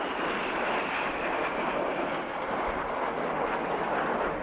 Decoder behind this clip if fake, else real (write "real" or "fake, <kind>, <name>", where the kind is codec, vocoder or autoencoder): real